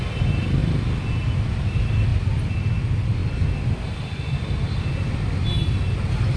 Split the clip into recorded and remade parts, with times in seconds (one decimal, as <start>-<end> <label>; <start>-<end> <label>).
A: 0.0-6.4 recorded